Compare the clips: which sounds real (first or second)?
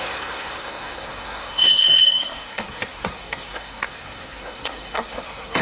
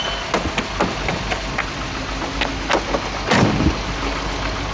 second